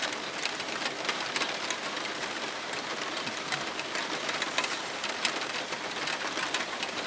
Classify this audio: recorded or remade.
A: remade